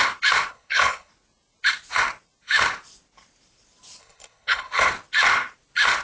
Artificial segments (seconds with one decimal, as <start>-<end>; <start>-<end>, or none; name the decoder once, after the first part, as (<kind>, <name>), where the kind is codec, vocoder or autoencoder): 0.5-1.1 (codec, HILCodec); 4.0-4.9